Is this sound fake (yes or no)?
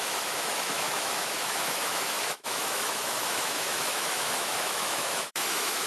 yes